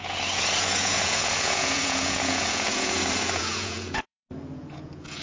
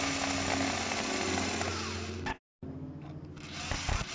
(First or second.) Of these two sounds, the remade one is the first